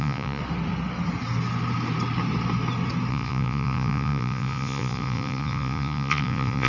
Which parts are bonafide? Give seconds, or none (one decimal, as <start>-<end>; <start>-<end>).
0.4-3.1